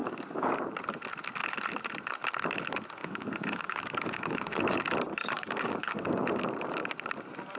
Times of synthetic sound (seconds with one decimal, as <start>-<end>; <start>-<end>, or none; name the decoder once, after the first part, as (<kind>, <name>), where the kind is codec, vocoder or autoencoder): 0.0-0.6 (codec, DAC); 3.0-4.6; 5.2-6.2